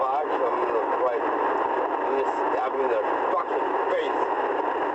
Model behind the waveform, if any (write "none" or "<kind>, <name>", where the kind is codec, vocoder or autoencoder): none